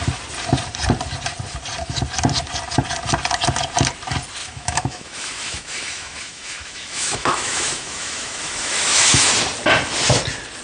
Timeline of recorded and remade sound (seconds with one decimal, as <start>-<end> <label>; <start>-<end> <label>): 0.0-4.4 recorded; 4.4-9.3 remade; 9.3-10.6 recorded